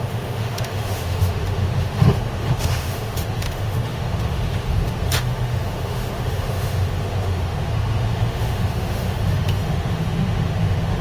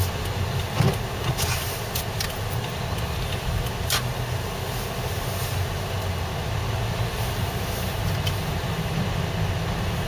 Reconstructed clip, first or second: first